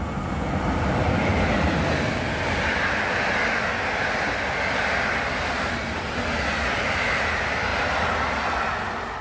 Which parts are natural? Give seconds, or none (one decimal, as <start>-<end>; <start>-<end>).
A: 0.0-9.2